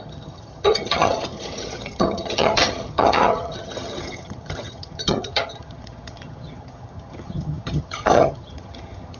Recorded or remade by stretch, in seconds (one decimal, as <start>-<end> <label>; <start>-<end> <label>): 0.0-9.2 remade

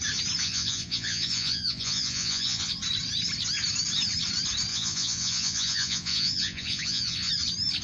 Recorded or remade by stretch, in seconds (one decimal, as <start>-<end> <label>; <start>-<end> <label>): 0.0-0.4 recorded; 0.4-2.7 remade; 2.7-4.7 recorded; 4.7-7.3 remade; 7.3-7.8 recorded

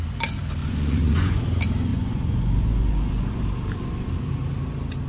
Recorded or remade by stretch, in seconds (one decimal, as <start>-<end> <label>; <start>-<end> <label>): 0.0-0.6 recorded; 0.6-1.4 remade; 1.4-1.9 recorded; 1.9-3.4 remade; 3.4-5.1 recorded

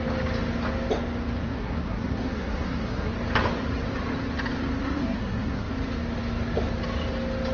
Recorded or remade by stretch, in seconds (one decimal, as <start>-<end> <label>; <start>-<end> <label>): 0.0-1.4 recorded; 1.4-3.1 remade; 3.1-4.8 recorded; 4.8-5.7 remade; 5.7-7.5 recorded

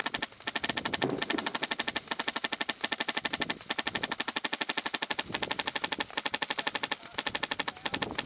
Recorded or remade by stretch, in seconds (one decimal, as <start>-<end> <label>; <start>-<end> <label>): 0.0-8.3 recorded

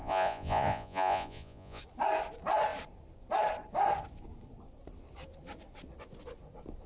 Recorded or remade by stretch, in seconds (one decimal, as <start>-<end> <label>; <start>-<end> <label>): 0.0-1.8 remade; 1.8-6.9 recorded

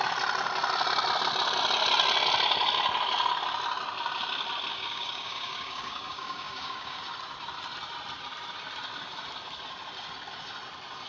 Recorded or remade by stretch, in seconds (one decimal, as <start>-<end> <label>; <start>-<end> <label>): 0.0-4.7 recorded; 4.7-7.0 remade; 7.0-11.1 recorded

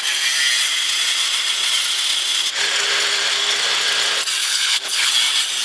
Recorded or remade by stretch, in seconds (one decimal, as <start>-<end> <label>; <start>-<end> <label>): 0.0-4.4 recorded; 4.4-5.1 remade; 5.1-5.6 recorded